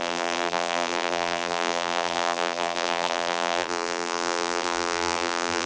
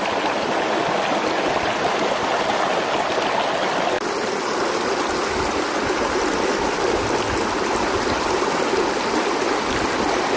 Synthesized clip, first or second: first